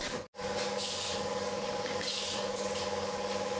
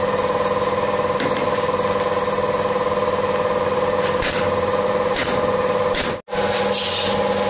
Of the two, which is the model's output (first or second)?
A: first